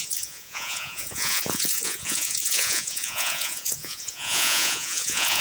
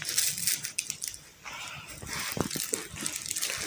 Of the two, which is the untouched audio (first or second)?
second